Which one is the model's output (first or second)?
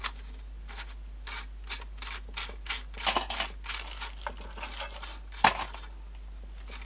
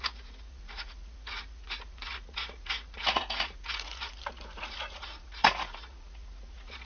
second